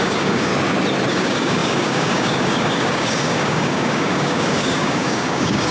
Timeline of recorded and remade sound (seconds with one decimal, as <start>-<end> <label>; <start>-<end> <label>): 0.0-0.5 remade; 0.5-1.1 recorded; 1.1-5.7 remade